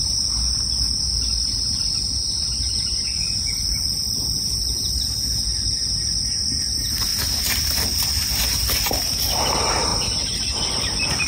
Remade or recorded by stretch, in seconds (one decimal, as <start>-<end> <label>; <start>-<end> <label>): 0.0-11.3 recorded